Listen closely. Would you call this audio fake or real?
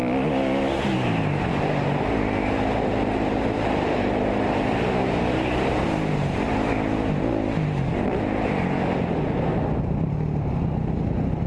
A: real